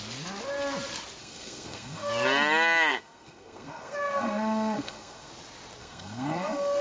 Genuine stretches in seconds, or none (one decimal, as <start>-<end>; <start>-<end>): 0.0-1.2; 2.1-2.9; 5.3-5.8